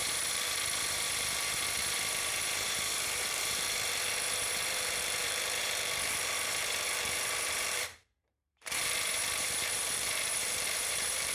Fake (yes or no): yes